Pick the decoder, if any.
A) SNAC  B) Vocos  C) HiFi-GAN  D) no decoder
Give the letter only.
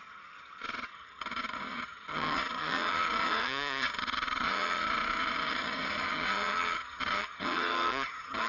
C